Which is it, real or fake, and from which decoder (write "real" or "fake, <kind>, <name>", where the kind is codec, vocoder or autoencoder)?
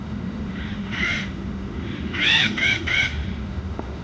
fake, autoencoder, DAC-VAE